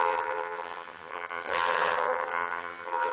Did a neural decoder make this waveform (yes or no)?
yes